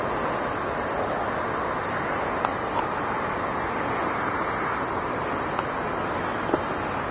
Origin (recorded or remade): recorded